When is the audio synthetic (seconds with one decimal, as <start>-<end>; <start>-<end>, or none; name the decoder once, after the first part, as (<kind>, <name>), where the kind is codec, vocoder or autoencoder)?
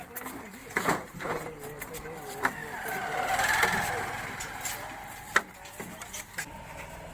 0.6-1.5 (vocoder, Vocos)